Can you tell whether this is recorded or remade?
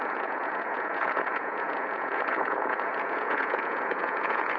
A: remade